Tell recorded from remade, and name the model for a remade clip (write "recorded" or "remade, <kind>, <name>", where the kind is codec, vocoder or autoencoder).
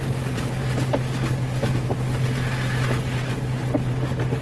recorded